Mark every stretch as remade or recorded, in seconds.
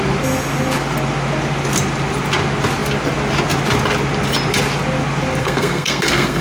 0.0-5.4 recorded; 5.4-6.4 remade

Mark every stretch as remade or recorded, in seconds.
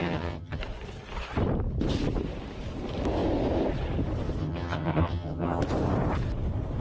0.0-0.6 remade; 0.6-4.4 recorded; 4.4-5.6 remade; 5.6-6.8 recorded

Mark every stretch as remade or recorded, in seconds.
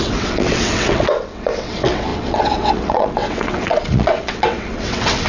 0.0-5.3 remade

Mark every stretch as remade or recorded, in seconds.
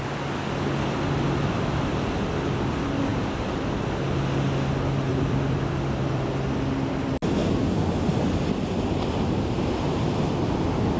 0.0-3.1 recorded; 3.1-3.7 remade; 3.7-5.1 recorded; 5.1-6.3 remade; 6.3-11.0 recorded